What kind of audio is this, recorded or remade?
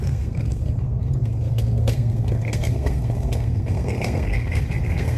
remade